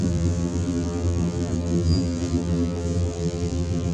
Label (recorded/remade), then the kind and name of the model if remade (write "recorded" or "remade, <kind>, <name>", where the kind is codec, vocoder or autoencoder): remade, vocoder, BigVGAN v2